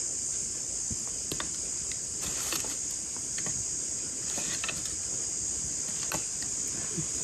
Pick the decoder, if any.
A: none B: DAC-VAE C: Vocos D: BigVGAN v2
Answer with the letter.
A